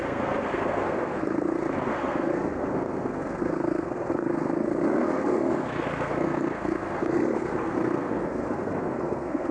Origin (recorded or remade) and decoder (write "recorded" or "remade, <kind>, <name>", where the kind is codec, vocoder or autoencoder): remade, codec, SNAC